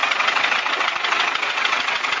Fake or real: fake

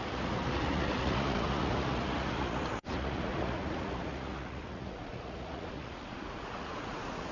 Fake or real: fake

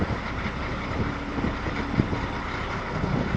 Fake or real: real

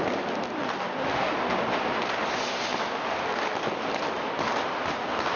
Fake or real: real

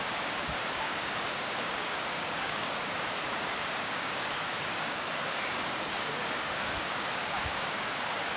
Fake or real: fake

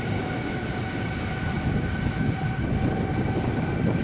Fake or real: real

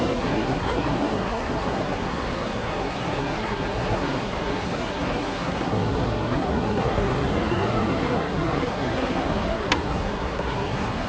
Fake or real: fake